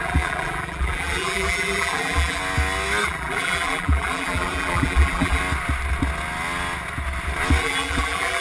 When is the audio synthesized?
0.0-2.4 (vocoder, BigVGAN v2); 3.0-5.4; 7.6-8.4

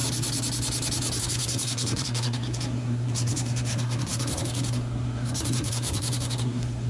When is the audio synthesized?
1.2-6.9 (codec, SNAC)